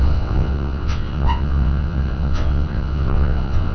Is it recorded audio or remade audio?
remade